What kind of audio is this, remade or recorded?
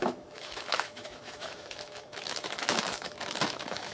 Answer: remade